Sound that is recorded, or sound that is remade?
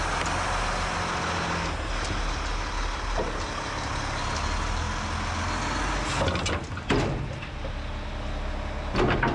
recorded